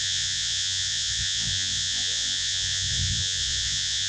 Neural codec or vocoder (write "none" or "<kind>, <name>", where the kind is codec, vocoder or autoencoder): vocoder, Vocos